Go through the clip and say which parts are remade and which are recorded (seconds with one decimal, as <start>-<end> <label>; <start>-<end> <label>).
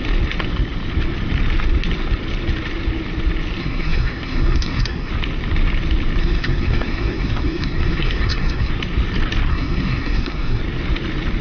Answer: 0.0-3.6 recorded; 3.6-5.1 remade; 5.1-6.2 recorded; 6.2-8.7 remade; 8.7-9.5 recorded; 9.5-10.6 remade; 10.6-11.4 recorded